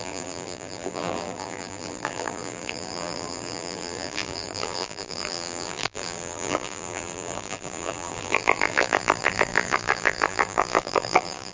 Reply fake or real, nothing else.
fake